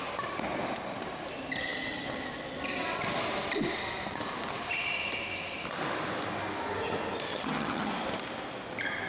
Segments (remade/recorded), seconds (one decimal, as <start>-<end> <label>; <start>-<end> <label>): 0.0-7.3 recorded; 7.3-7.9 remade; 7.9-9.1 recorded